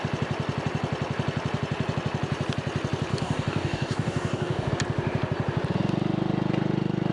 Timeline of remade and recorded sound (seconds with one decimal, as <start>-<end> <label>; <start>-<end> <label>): 0.0-3.1 recorded; 3.1-4.7 remade; 4.7-7.1 recorded